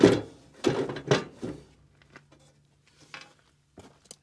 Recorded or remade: recorded